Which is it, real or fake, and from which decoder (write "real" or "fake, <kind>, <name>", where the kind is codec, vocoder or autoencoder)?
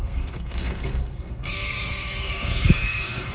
fake, codec, SNAC